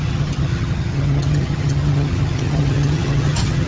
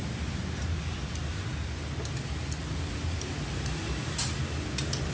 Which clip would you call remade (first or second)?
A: first